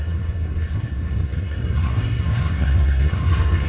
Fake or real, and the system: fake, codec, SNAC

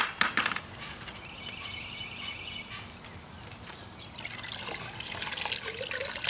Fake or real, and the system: real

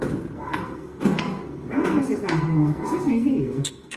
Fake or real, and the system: fake, codec, SNAC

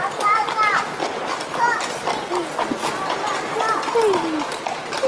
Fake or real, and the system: real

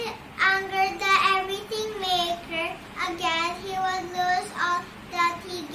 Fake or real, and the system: real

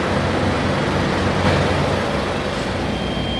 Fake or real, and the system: real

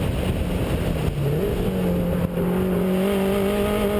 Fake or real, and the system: real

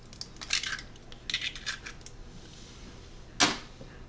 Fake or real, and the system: real